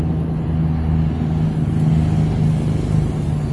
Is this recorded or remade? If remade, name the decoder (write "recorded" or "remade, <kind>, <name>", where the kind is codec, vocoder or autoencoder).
recorded